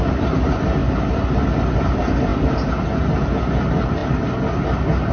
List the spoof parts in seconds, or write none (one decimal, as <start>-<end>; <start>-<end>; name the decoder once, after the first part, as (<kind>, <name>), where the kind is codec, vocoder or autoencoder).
none